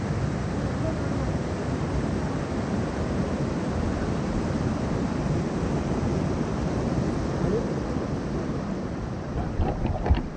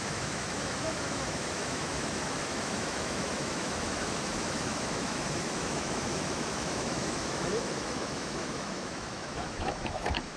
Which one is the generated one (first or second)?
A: second